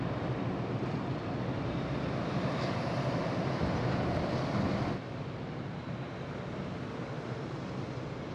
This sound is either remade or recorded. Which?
recorded